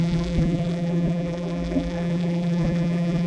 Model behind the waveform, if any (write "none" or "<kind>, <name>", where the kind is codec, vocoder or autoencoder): vocoder, BigVGAN v2